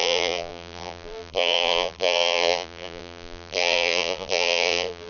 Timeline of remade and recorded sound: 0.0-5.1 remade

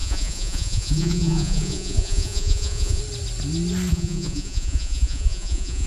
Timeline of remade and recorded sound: 0.0-3.0 remade; 3.0-3.9 recorded; 3.9-5.9 remade

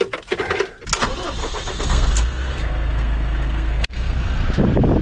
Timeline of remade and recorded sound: 0.0-1.4 recorded; 1.4-4.4 remade; 4.4-5.0 recorded